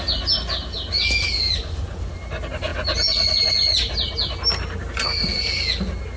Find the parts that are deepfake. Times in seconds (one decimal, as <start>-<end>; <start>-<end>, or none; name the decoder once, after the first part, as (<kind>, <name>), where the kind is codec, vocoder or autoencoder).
none

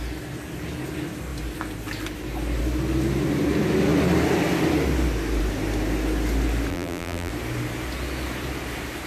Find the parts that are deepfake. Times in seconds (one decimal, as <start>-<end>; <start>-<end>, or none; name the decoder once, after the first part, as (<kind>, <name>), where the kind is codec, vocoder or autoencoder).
6.7-7.3 (vocoder, BigVGAN v2)

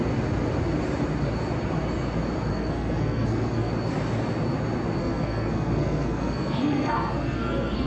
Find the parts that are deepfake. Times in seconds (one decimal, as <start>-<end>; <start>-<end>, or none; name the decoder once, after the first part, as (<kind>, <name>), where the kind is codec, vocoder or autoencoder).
2.5-3.7 (codec, SNAC); 5.0-7.9

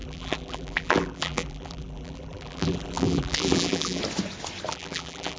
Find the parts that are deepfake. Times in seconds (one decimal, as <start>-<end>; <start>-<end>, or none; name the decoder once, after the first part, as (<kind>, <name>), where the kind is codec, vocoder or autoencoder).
0.0-4.0 (vocoder, BigVGAN v2); 4.7-5.4